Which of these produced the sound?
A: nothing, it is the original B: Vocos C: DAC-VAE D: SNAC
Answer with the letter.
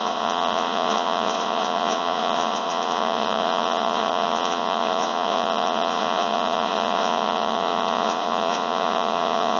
B